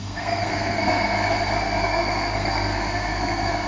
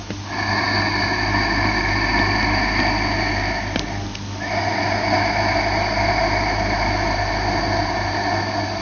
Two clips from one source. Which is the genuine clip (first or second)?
second